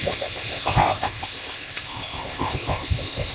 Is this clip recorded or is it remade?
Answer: remade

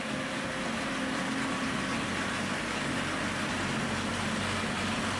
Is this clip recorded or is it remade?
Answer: recorded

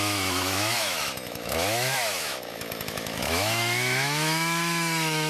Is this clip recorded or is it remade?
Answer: remade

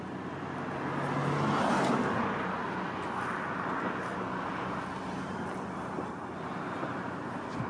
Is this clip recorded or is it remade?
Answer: recorded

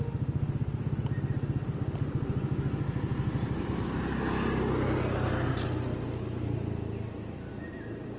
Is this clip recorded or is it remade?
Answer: recorded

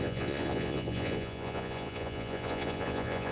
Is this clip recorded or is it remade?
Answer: remade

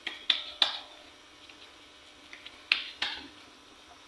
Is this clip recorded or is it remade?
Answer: recorded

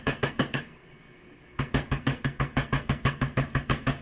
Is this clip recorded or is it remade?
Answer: remade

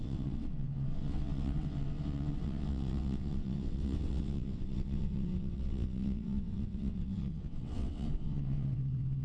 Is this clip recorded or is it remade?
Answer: remade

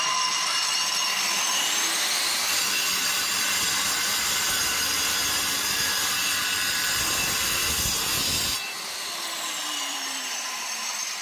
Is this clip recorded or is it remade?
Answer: remade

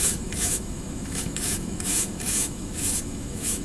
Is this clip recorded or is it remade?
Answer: remade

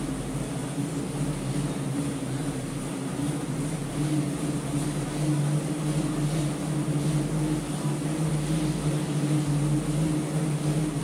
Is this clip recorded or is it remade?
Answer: recorded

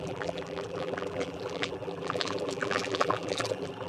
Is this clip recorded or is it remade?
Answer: remade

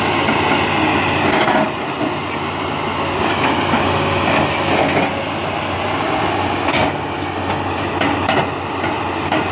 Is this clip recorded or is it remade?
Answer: recorded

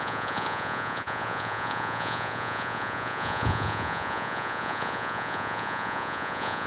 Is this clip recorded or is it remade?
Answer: remade